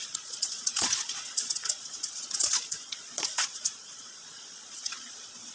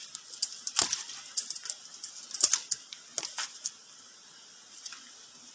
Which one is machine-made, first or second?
first